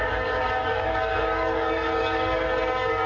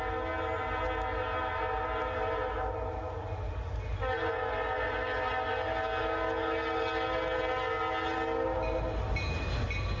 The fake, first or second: first